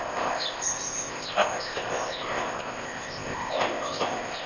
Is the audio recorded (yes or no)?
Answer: no